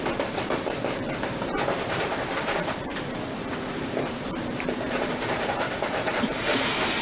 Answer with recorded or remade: remade